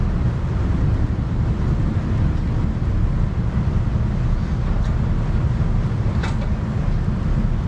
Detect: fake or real real